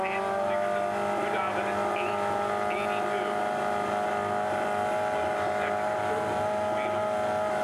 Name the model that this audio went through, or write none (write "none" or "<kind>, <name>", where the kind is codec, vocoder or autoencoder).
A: none